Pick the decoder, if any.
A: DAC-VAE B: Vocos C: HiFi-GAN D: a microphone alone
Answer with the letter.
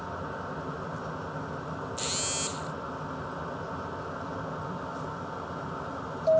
D